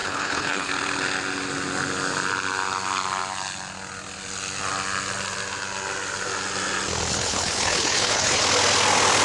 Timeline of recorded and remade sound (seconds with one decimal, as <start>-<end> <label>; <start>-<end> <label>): 0.0-0.7 remade; 0.7-7.1 recorded; 7.1-8.4 remade; 8.4-9.2 recorded